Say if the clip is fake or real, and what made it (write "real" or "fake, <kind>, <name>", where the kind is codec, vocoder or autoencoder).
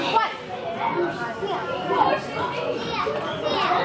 real